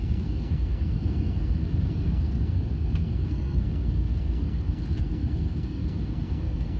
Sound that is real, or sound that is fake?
fake